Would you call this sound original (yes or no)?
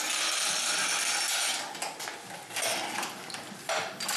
yes